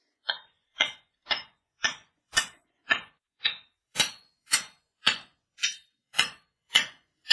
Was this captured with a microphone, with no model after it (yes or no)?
no